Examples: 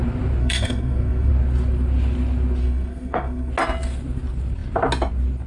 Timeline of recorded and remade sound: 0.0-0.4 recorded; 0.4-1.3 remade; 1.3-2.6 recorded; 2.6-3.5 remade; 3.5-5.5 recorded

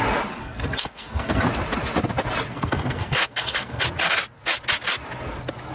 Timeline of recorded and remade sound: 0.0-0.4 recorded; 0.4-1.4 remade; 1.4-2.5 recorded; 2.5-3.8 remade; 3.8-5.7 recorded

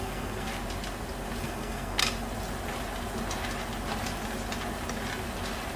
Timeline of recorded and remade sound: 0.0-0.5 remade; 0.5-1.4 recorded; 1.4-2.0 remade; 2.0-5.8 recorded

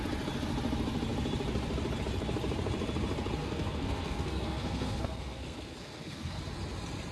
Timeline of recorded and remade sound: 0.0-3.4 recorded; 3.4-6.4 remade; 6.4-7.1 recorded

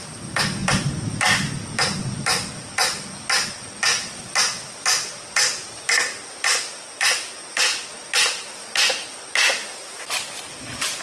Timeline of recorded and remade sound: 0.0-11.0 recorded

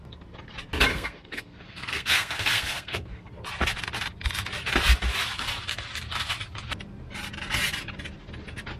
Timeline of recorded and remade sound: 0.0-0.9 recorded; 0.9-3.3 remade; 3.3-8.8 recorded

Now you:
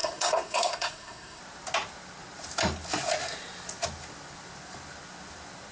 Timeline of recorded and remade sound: 0.0-1.4 remade; 1.4-5.7 recorded

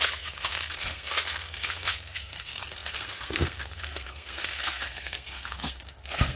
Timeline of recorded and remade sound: 0.0-6.4 remade